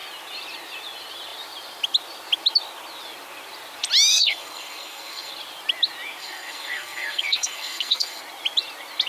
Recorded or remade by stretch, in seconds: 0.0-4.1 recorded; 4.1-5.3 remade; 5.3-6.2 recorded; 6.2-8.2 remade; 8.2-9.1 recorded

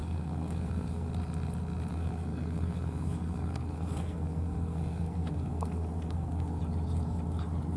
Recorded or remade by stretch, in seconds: 0.0-1.1 remade; 1.1-1.9 recorded; 1.9-6.6 remade; 6.6-7.8 recorded

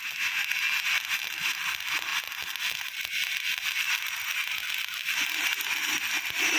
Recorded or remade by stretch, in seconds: 0.0-6.6 recorded

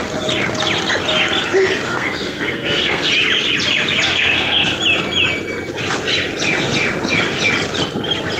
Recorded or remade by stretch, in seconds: 0.0-1.9 recorded; 1.9-3.1 remade; 3.1-4.1 recorded; 4.1-4.8 remade; 4.8-8.4 recorded